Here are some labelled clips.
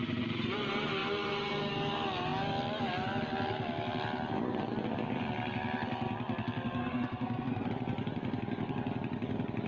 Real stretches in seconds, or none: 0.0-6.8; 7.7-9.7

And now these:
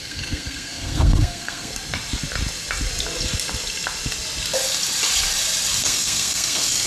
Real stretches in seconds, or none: 1.7-5.8

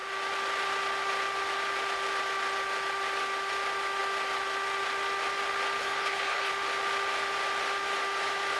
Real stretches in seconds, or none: 0.0-5.8; 6.5-8.6

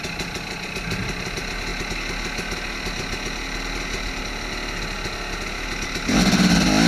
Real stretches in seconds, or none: 0.0-6.9

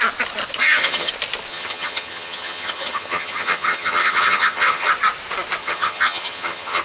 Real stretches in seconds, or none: 0.0-0.6; 1.1-1.5; 4.9-5.6

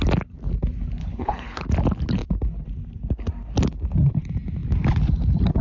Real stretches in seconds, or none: 0.0-1.0; 1.6-5.6